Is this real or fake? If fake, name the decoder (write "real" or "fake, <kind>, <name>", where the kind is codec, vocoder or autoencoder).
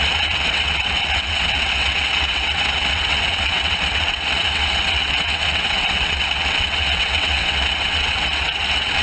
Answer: fake, vocoder, WaveNeXt